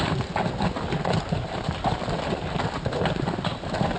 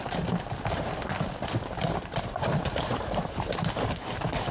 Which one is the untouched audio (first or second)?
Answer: first